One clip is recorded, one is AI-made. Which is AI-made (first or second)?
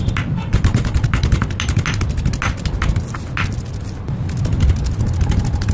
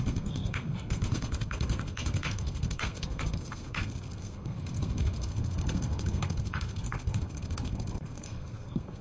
second